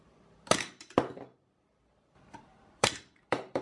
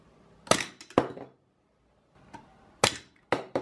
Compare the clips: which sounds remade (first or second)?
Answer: first